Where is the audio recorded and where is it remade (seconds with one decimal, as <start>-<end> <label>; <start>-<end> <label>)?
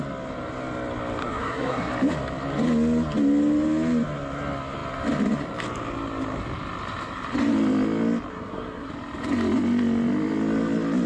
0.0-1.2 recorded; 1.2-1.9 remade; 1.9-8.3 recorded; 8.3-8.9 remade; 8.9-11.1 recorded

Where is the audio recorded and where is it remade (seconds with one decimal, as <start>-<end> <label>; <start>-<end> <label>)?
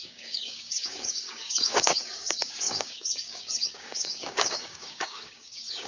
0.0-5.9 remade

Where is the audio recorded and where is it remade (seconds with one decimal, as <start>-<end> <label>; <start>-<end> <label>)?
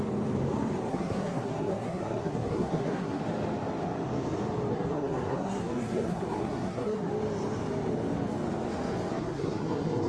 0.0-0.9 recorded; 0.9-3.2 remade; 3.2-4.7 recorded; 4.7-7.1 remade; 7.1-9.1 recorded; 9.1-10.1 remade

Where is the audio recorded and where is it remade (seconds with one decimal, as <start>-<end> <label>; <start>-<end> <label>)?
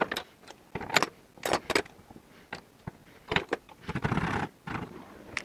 0.0-3.0 recorded; 3.0-3.8 remade; 3.8-5.4 recorded